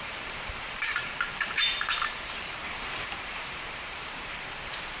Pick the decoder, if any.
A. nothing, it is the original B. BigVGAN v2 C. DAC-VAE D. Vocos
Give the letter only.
B